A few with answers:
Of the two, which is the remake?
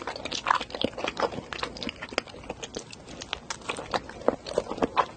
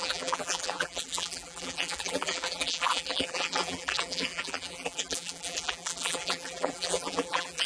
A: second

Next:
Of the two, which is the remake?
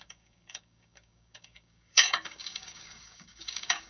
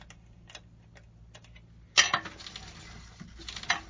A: first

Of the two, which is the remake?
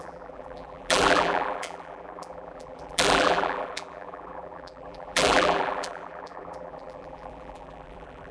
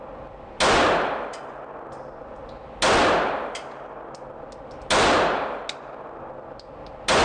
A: first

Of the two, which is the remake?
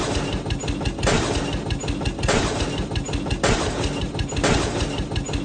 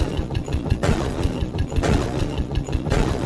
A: second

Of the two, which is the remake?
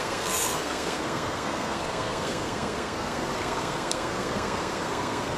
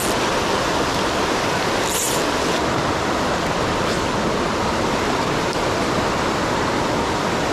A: first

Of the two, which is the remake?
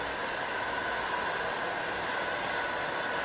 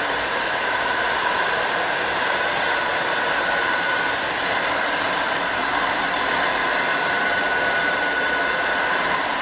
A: second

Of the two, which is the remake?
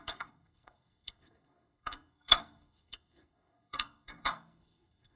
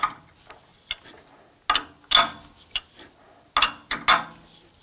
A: first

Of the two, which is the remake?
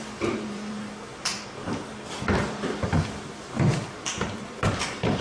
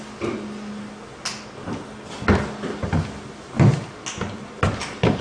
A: first